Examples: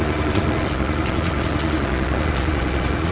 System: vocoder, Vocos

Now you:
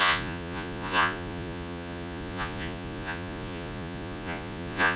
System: vocoder, Vocos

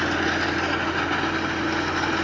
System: none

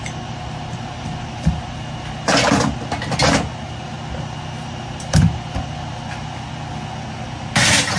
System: none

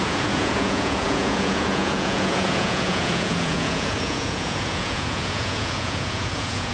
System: vocoder, Vocos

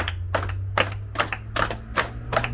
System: none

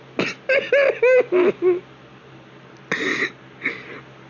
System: none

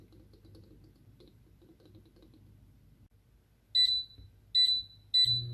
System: none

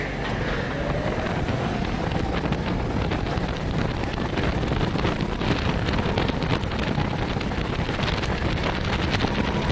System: none